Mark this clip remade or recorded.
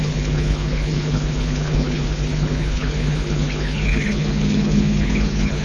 remade